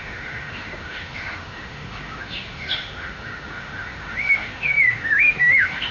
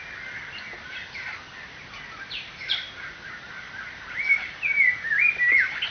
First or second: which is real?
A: second